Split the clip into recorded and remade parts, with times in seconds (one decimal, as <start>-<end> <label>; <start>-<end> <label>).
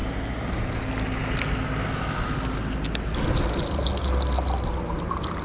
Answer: 0.0-0.5 remade; 0.5-5.4 recorded